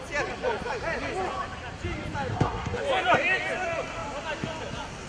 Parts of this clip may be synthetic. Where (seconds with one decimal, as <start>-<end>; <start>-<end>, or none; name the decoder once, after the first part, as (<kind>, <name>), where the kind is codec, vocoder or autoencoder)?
2.3-2.8 (codec, SNAC)